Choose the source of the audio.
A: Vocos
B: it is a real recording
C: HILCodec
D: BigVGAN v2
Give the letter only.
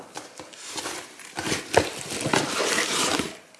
D